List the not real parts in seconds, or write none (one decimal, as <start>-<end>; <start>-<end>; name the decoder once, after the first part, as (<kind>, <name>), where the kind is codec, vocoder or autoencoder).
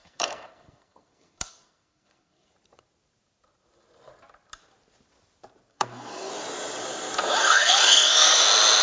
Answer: 0.0-2.5 (codec, SNAC); 5.7-6.3; 7.4-8.4